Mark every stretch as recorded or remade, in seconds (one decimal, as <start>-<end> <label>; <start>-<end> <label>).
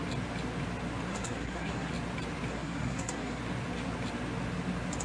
0.0-1.1 recorded; 1.1-1.9 remade; 1.9-2.5 recorded; 2.5-3.4 remade; 3.4-5.0 recorded